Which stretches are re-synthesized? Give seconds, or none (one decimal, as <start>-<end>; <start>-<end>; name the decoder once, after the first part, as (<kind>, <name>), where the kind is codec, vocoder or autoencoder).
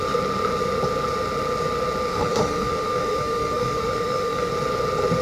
2.1-4.5 (autoencoder, DAC-VAE)